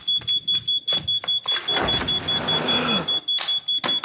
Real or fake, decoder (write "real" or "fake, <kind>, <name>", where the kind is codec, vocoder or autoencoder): real